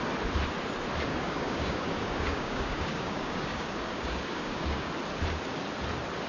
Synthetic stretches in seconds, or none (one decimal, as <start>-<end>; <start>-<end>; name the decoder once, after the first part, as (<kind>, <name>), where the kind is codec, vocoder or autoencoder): 1.1-4.9 (codec, DAC)